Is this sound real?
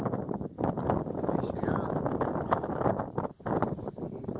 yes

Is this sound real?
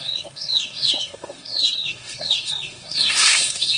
no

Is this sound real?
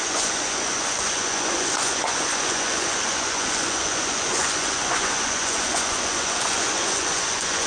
no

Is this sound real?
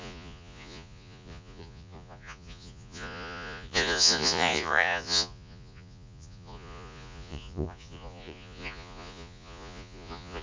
no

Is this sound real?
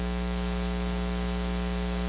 yes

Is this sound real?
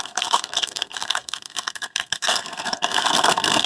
no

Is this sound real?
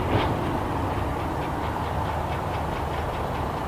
yes